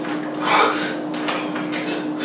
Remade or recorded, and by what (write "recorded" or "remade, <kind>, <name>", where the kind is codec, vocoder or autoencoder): recorded